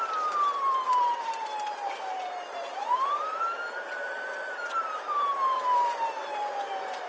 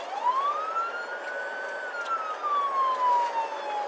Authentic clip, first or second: second